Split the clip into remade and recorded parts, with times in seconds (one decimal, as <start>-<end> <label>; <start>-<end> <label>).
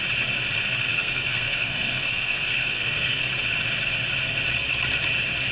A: 0.0-0.9 recorded; 0.9-3.3 remade; 3.3-5.5 recorded